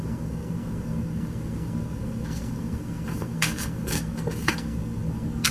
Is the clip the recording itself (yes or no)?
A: no